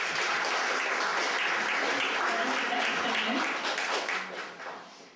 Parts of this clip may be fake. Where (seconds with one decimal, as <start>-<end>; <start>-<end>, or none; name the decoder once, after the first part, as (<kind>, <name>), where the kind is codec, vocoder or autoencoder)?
1.1-2.8 (vocoder, BigVGAN v2)